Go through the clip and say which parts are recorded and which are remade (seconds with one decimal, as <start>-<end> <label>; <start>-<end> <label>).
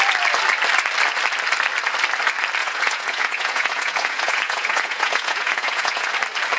0.0-2.6 recorded; 2.6-6.1 remade; 6.1-6.6 recorded